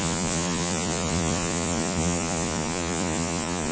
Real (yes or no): no